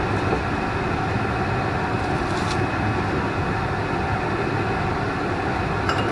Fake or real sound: real